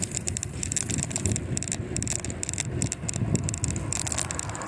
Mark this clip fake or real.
real